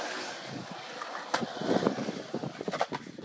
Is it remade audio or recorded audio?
recorded